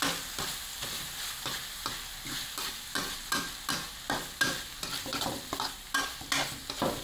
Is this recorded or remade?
recorded